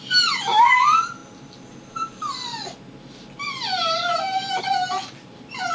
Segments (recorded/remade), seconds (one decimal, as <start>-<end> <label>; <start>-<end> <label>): 0.0-5.7 recorded